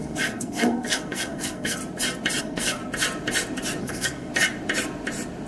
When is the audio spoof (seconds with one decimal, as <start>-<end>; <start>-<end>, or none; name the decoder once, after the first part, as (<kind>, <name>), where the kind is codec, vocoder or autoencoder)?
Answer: 0.0-1.8 (codec, SNAC); 2.4-2.8; 3.8-4.3